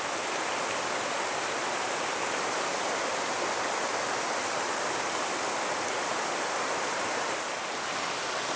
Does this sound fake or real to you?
fake